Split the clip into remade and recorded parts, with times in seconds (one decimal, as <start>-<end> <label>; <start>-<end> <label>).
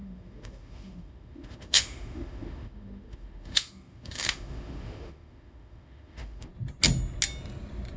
0.0-6.5 remade; 6.5-8.0 recorded